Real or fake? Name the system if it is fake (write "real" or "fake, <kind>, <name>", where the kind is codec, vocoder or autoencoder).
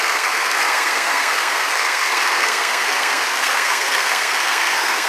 fake, codec, SNAC